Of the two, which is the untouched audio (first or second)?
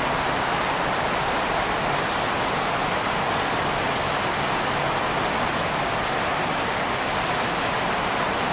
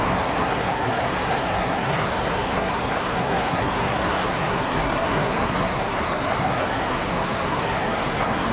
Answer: first